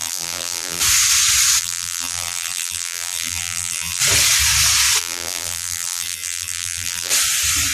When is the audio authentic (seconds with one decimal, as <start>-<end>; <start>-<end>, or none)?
0.8-1.6; 4.0-5.0; 7.1-7.7